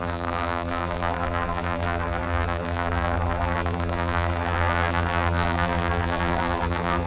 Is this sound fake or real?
fake